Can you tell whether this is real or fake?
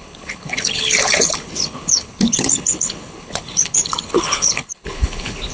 fake